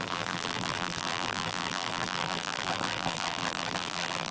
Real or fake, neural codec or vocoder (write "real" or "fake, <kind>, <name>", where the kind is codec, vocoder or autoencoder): fake, vocoder, BigVGAN v2